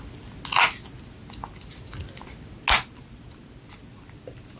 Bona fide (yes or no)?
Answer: yes